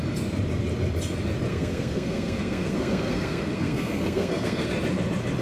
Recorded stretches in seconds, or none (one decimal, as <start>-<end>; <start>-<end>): 0.0-1.5; 4.7-5.4